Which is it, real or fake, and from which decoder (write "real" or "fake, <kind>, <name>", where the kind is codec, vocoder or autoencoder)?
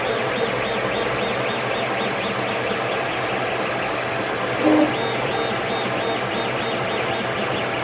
real